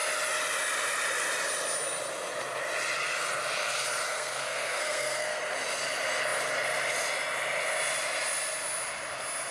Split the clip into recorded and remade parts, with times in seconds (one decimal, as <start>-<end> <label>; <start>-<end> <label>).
0.0-4.1 recorded; 4.1-5.4 remade; 5.4-9.5 recorded